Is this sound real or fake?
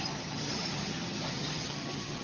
fake